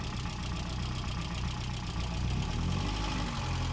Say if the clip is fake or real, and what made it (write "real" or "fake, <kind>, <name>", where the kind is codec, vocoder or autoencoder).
real